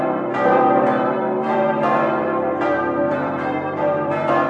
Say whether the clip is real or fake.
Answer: fake